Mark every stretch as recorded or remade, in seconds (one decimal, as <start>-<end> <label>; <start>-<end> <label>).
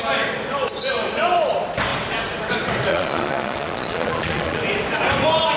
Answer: 0.0-2.9 recorded; 2.9-4.6 remade; 4.6-5.6 recorded